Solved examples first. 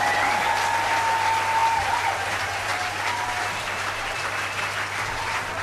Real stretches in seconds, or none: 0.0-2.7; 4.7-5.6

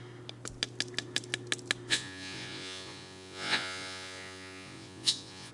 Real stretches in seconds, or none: 0.0-1.9